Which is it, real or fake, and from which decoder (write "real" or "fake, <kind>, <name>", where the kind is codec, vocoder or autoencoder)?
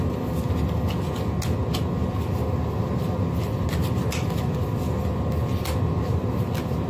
real